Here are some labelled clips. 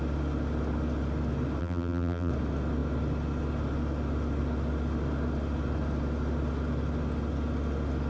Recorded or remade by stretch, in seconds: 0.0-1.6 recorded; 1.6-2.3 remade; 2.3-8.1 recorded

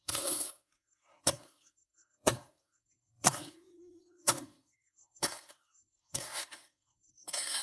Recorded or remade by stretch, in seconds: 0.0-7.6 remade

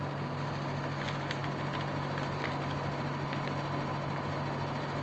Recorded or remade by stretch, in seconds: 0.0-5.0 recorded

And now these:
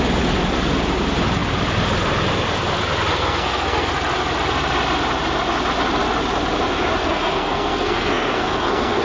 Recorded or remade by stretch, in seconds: 0.0-3.1 recorded; 3.1-3.9 remade; 3.9-7.0 recorded; 7.0-9.0 remade

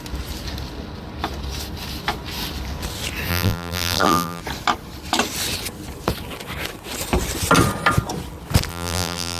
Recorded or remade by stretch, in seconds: 0.0-3.3 recorded; 3.3-4.4 remade; 4.4-8.7 recorded; 8.7-9.4 remade